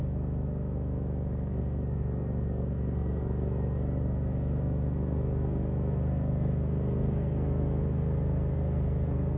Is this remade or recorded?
remade